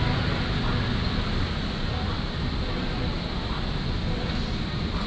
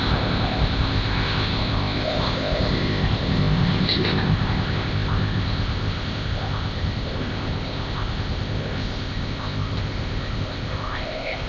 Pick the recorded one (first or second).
first